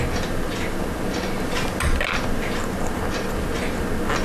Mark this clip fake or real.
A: real